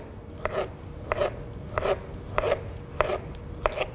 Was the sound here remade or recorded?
recorded